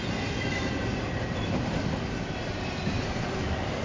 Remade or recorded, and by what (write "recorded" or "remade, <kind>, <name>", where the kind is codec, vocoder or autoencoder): recorded